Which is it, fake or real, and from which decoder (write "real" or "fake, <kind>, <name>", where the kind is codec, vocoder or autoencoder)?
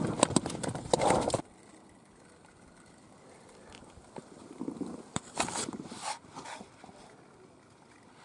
fake, vocoder, BigVGAN v2